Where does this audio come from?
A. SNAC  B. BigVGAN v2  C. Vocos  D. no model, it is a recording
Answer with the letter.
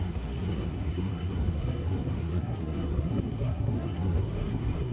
A